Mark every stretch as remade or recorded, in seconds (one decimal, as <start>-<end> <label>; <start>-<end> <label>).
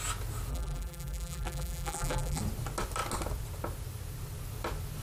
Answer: 0.0-0.5 recorded; 0.5-2.4 remade; 2.4-5.0 recorded